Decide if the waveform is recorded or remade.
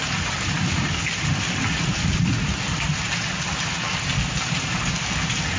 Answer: recorded